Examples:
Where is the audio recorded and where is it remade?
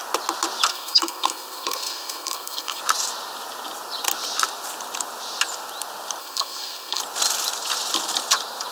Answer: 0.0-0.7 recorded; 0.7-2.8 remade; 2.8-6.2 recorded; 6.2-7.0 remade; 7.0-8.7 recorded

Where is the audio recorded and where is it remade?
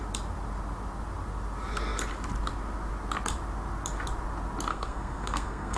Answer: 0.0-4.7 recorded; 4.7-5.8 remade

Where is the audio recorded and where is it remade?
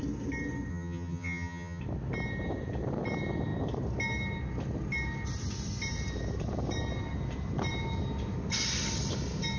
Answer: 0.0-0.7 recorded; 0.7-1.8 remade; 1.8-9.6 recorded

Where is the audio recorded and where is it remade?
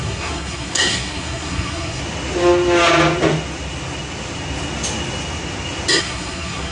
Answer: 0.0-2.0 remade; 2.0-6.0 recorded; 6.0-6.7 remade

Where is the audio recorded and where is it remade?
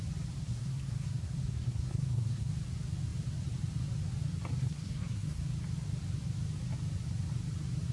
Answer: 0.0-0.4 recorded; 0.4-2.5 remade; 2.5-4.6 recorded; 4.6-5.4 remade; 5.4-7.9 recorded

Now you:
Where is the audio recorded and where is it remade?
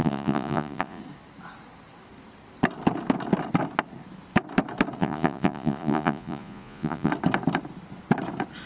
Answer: 0.0-1.0 remade; 1.0-5.0 recorded; 5.0-7.1 remade; 7.1-8.7 recorded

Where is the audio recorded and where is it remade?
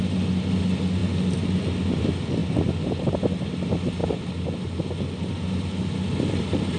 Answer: 0.0-6.8 recorded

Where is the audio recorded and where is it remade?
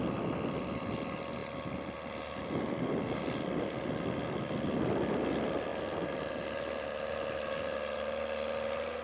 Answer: 0.0-9.0 recorded